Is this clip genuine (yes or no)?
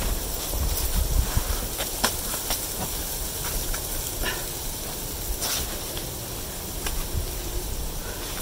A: yes